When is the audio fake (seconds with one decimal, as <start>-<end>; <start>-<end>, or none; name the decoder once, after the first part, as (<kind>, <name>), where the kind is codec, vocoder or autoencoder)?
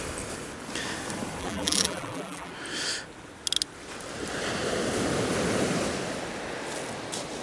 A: 1.4-2.5 (vocoder, BigVGAN v2)